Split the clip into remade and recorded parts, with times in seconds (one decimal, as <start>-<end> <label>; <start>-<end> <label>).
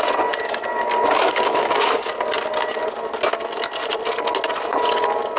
0.0-1.2 recorded; 1.2-2.1 remade; 2.1-5.4 recorded